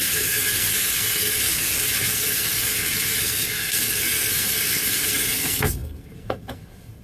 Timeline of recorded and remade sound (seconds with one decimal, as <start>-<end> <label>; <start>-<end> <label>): 0.0-7.0 remade